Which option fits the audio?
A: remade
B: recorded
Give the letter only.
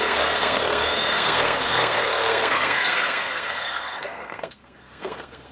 A